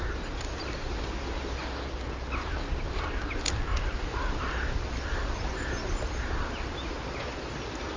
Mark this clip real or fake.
real